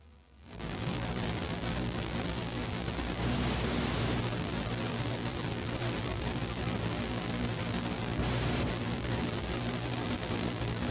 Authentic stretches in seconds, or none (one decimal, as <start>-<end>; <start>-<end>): 3.2-4.2; 8.2-8.7